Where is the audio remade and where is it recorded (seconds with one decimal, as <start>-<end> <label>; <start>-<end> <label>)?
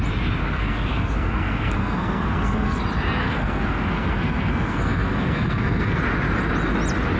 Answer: 0.0-0.4 recorded; 0.4-2.8 remade; 2.8-3.2 recorded; 3.2-6.0 remade; 6.0-7.2 recorded